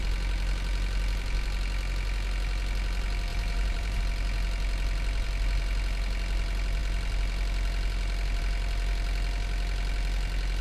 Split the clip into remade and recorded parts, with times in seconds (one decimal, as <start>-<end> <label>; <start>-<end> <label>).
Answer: 0.0-3.3 recorded; 3.3-4.0 remade; 4.0-10.6 recorded